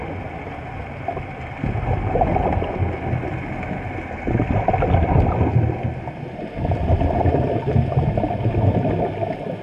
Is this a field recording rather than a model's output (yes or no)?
yes